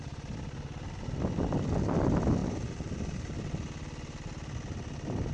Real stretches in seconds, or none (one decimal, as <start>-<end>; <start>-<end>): 0.0-2.4; 3.3-5.3